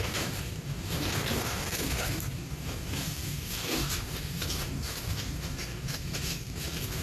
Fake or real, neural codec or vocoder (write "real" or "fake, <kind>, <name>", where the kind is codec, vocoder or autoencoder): fake, codec, DAC